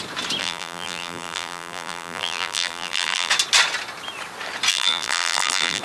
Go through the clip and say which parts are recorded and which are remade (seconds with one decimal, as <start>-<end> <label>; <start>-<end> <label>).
0.0-0.4 recorded; 0.4-3.3 remade; 3.3-4.7 recorded; 4.7-5.8 remade